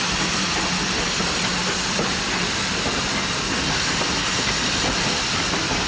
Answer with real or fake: real